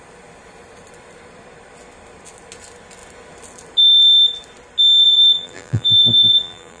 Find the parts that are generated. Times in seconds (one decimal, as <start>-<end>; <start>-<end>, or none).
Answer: 5.0-6.8